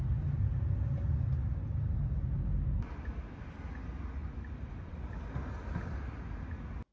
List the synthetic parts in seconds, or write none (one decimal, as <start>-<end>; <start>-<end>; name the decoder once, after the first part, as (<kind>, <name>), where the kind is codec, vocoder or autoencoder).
none